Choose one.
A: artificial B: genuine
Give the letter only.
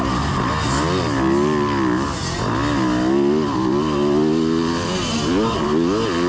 B